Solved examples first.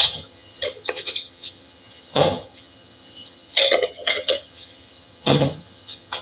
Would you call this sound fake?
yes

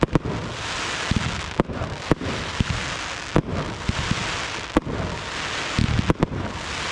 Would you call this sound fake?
no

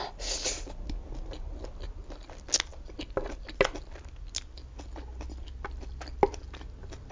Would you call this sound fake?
no